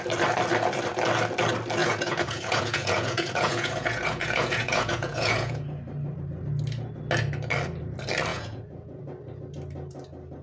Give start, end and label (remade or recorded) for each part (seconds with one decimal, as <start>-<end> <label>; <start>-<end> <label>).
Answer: 0.0-1.8 recorded; 1.8-5.8 remade; 5.8-8.3 recorded; 8.3-9.0 remade; 9.0-10.4 recorded